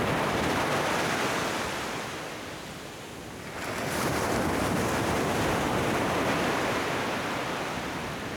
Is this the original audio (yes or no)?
yes